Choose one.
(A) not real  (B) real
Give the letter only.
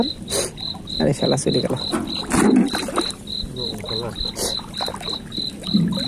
B